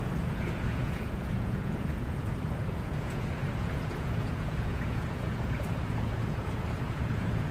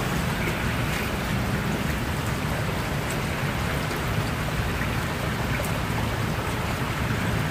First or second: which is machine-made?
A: first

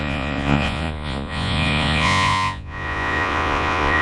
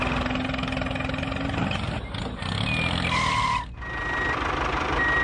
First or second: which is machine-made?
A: first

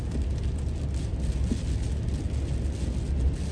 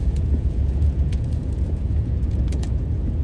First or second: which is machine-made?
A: second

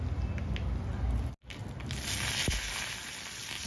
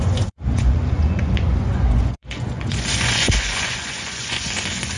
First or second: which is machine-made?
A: second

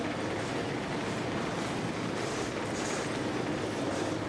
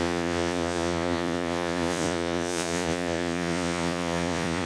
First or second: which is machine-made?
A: second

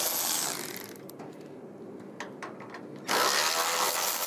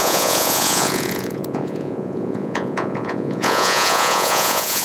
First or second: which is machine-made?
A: second